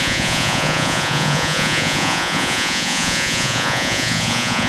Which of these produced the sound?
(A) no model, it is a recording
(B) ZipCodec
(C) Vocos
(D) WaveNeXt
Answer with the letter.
C